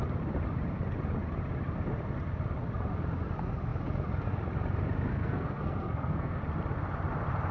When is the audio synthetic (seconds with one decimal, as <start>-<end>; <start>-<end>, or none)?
5.1-6.4